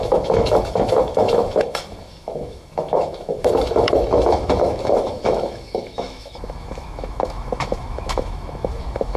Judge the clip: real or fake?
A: fake